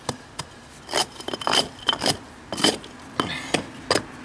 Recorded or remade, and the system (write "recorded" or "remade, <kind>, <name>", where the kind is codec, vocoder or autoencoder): recorded